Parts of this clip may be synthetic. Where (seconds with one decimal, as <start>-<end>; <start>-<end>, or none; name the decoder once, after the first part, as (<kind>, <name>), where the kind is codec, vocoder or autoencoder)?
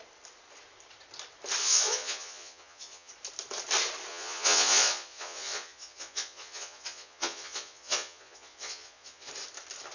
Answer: 1.6-3.1 (vocoder, Vocos); 4.1-9.3